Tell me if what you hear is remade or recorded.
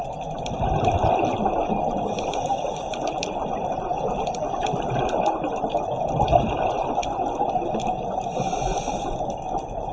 recorded